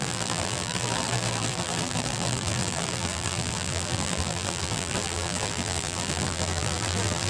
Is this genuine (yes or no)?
no